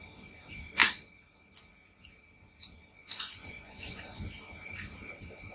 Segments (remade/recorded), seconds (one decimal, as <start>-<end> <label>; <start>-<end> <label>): 0.0-3.0 recorded; 3.0-4.2 remade; 4.2-5.5 recorded

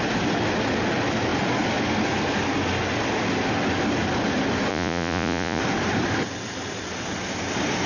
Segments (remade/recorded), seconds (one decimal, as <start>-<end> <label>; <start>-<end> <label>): 0.0-4.7 recorded; 4.7-5.6 remade; 5.6-7.9 recorded

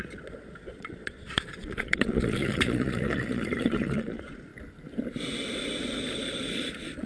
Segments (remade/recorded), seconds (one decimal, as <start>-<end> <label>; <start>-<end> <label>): 0.0-4.5 remade; 4.5-6.5 recorded; 6.5-7.1 remade

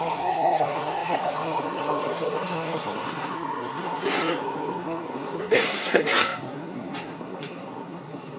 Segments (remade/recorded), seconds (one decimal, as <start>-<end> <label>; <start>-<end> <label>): 0.0-8.4 remade

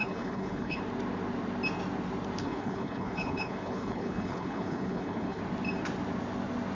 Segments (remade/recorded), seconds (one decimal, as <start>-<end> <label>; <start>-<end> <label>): 0.0-0.8 remade; 0.8-2.4 recorded; 2.4-5.4 remade; 5.4-6.7 recorded

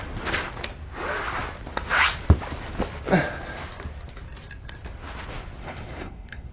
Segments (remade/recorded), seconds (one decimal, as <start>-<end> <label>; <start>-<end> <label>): 0.0-5.6 recorded; 5.6-6.5 remade

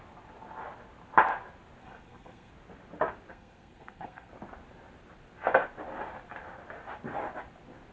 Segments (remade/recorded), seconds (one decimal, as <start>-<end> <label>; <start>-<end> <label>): 0.0-1.8 recorded; 1.8-2.5 remade; 2.5-3.3 recorded; 3.3-4.3 remade; 4.3-7.9 recorded